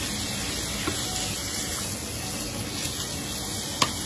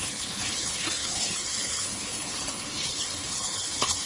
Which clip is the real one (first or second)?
first